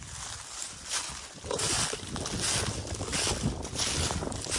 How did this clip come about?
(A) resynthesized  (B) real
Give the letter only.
B